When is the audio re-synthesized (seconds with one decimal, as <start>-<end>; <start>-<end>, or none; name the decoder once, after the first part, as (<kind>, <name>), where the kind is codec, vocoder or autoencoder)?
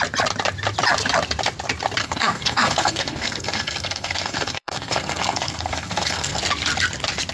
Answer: 2.0-6.4 (codec, SNAC)